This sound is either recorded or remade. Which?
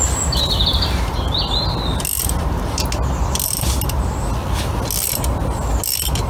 recorded